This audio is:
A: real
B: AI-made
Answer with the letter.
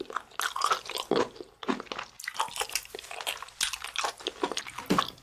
A